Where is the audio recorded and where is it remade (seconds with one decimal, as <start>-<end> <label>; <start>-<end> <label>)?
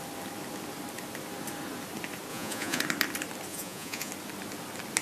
0.0-2.3 recorded; 2.3-2.8 remade; 2.8-3.5 recorded; 3.5-4.1 remade; 4.1-5.0 recorded